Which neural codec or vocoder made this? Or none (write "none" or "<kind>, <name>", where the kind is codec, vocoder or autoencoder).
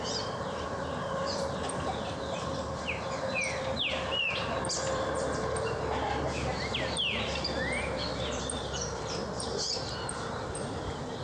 vocoder, BigVGAN v2